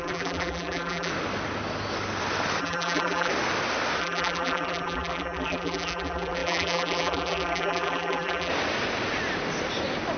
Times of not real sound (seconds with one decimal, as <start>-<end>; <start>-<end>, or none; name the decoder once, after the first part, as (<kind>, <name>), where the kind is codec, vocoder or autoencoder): 0.0-1.1 (vocoder, BigVGAN v2); 2.6-3.3; 4.0-8.5